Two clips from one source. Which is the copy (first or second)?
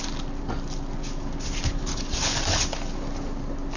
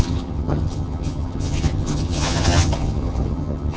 second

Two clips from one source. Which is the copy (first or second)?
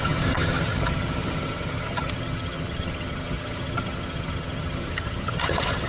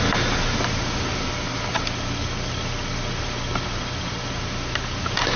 first